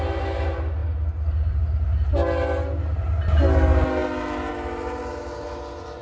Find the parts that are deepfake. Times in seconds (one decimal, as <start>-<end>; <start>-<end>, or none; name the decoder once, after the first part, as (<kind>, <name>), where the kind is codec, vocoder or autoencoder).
none